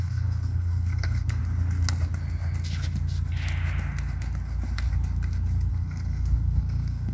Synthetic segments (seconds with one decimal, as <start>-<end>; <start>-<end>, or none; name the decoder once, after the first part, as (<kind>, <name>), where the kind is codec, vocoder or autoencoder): 0.0-1.4 (codec, SNAC); 5.7-7.1